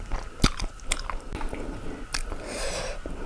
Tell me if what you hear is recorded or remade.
recorded